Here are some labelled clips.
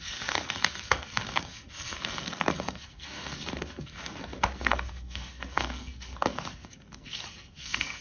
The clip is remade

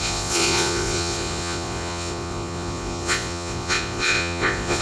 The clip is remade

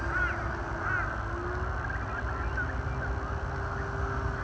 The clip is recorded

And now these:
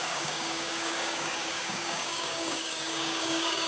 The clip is remade